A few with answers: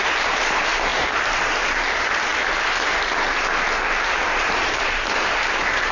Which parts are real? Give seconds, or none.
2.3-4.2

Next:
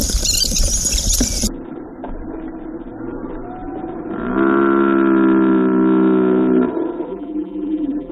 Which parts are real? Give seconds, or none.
0.0-7.1

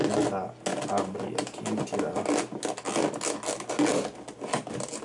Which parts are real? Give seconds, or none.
0.0-5.0

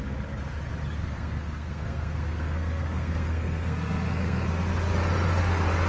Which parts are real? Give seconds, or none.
0.0-1.0; 4.5-5.9

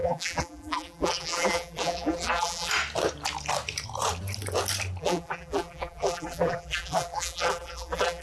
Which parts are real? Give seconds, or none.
2.7-5.0

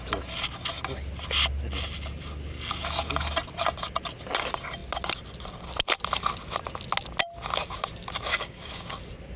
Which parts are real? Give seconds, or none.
0.0-8.3; 8.9-9.4

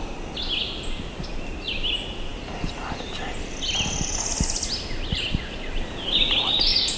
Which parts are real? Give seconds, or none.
0.0-7.0